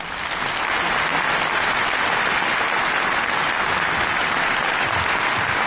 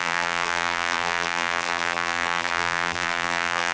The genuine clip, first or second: first